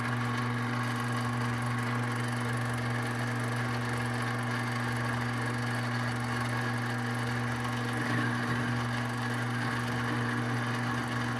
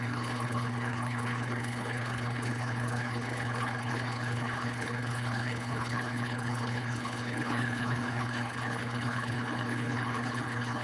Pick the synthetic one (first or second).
second